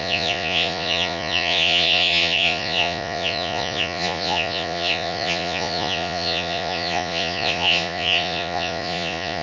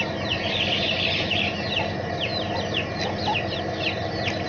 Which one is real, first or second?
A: second